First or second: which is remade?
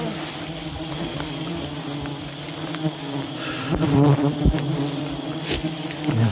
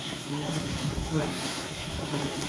second